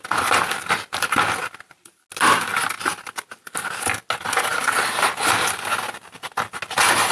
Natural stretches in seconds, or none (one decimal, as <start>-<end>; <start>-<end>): 0.0-7.1